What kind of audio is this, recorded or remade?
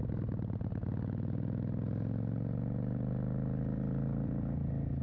recorded